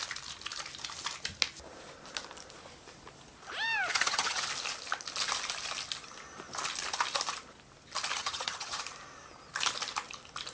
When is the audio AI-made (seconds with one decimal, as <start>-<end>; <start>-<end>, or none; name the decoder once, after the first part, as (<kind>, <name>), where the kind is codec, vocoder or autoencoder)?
3.9-4.5 (vocoder, HiFi-GAN); 8.1-8.8